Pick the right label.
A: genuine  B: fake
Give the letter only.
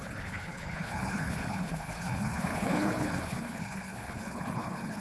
B